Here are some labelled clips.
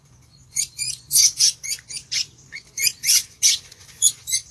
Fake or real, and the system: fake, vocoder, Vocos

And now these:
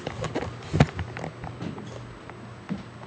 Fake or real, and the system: real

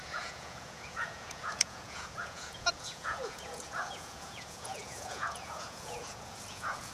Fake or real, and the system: fake, vocoder, Vocos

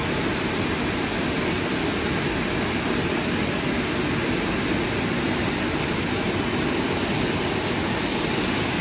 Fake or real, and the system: real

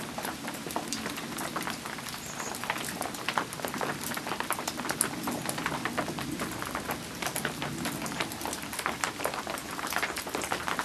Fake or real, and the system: real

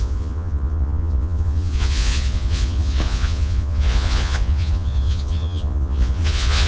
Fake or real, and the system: fake, vocoder, Vocos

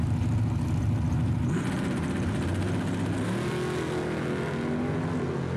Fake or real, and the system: real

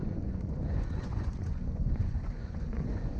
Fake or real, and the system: fake, vocoder, Vocos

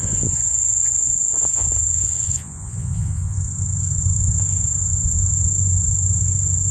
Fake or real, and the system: fake, vocoder, Vocos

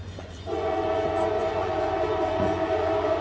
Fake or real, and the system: fake, vocoder, Vocos